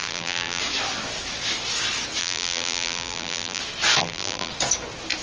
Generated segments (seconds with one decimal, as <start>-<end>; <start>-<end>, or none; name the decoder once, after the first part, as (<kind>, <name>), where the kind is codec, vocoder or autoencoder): 0.0-0.6 (vocoder, BigVGAN v2); 2.2-3.6; 4.0-4.5